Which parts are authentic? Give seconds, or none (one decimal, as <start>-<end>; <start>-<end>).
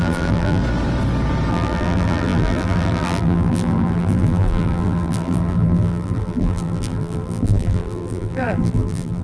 0.6-1.5